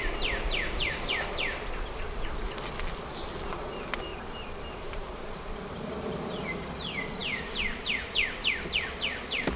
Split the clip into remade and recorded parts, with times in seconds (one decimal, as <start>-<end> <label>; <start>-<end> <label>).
0.0-4.1 recorded; 4.1-5.9 remade; 5.9-9.6 recorded